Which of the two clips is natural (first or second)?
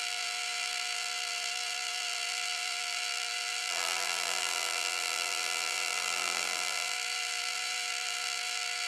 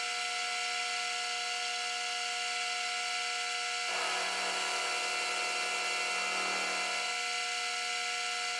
second